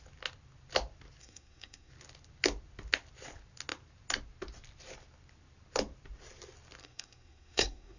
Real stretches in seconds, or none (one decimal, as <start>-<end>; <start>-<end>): 0.0-1.2; 1.9-6.8

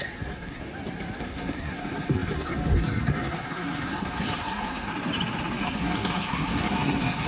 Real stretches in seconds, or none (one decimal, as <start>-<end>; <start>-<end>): 0.6-1.2; 4.9-5.6

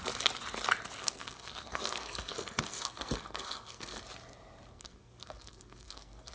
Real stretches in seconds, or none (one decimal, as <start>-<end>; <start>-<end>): 0.0-1.0; 4.0-4.7

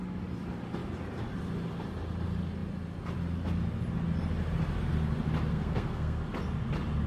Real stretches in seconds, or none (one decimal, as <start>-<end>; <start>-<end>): 0.0-5.5; 6.2-7.1

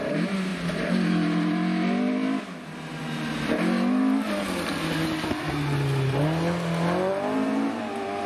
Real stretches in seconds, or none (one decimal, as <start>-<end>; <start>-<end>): 0.0-8.3